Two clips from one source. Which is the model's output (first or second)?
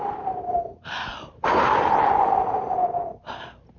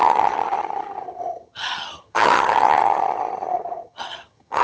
second